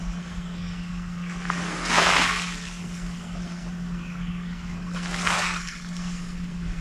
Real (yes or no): no